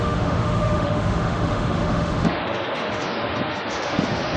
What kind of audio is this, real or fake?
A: fake